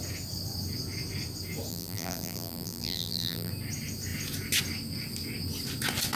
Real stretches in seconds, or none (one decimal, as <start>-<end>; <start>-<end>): 0.0-1.7; 3.5-6.2